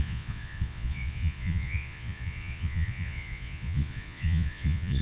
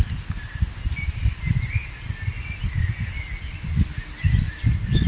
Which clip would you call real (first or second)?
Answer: second